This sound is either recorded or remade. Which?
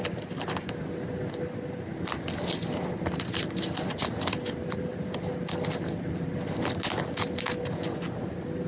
recorded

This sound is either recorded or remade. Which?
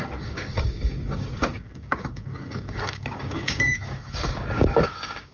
remade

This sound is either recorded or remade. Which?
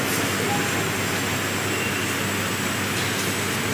recorded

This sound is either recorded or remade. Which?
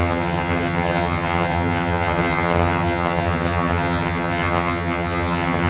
remade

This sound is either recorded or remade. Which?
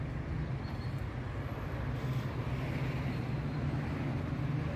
recorded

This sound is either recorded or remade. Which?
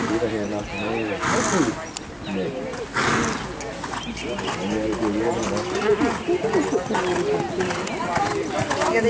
recorded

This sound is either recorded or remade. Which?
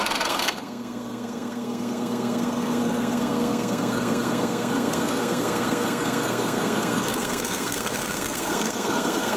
remade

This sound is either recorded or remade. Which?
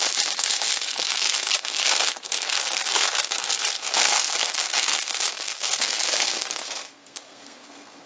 remade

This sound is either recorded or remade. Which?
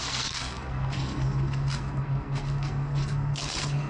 remade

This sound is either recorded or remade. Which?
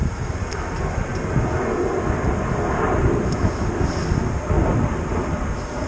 recorded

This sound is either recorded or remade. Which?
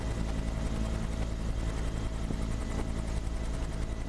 recorded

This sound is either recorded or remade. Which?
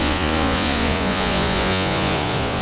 remade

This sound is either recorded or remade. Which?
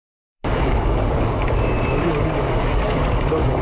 remade